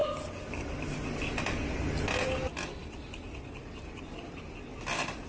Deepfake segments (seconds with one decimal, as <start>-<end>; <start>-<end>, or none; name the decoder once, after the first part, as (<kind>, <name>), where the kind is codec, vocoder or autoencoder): none